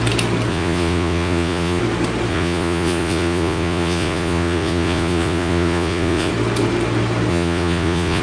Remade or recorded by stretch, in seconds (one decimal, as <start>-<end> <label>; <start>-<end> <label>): 0.0-0.5 recorded; 0.5-1.8 remade; 1.8-2.3 recorded; 2.3-6.3 remade; 6.3-7.3 recorded; 7.3-8.2 remade